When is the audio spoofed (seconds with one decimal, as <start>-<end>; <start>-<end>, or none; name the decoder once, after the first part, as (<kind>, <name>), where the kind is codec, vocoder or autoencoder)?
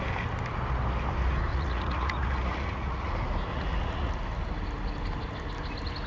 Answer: 1.5-3.1 (vocoder, Vocos); 3.5-4.1